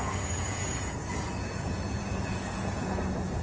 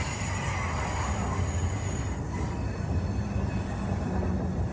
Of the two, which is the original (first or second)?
second